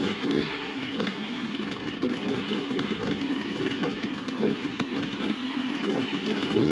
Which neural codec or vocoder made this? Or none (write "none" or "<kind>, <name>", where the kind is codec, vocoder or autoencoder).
codec, SNAC